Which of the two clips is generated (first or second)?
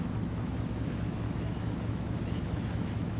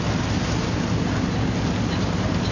first